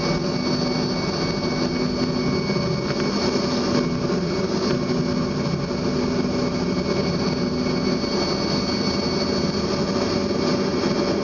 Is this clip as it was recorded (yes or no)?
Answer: yes